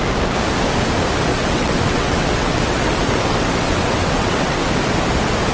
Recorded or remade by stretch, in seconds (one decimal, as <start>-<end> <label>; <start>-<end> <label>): 0.0-1.3 recorded; 1.3-4.6 remade; 4.6-5.5 recorded